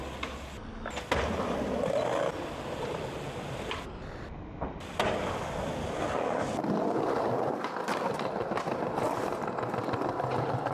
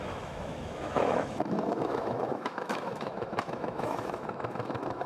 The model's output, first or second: second